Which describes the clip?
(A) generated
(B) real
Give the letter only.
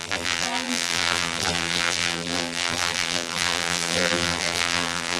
A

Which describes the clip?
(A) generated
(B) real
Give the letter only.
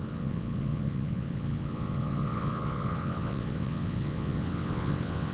A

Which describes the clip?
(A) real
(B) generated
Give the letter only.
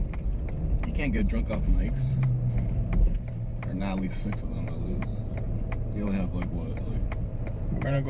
B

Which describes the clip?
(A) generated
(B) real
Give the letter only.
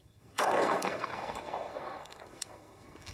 A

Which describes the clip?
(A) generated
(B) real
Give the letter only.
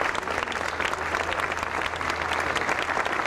B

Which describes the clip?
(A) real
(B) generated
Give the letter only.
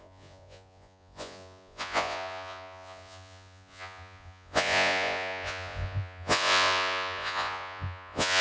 B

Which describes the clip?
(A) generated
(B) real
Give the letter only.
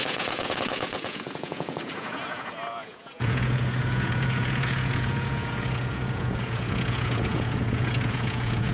A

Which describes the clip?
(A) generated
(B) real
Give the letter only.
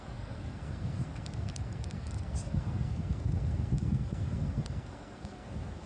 A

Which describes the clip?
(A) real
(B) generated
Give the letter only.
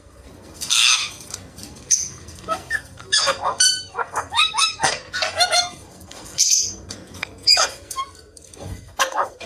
B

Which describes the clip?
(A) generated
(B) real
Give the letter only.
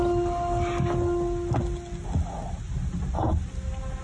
B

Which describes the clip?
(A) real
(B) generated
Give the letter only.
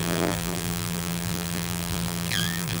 B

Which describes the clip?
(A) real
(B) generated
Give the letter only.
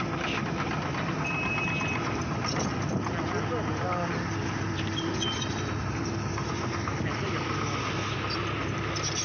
A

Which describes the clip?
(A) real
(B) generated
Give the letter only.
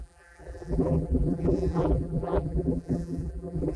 B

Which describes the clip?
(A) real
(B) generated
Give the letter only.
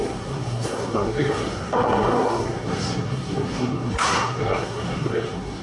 B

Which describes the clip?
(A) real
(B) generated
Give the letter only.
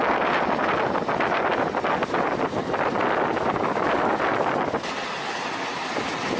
A